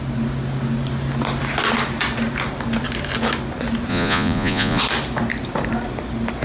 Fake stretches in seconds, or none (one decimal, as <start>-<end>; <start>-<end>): 3.9-4.8